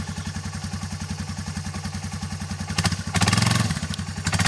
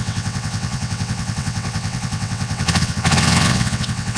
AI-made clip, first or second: second